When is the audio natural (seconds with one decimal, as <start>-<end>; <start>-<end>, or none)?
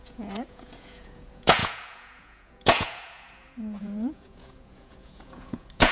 none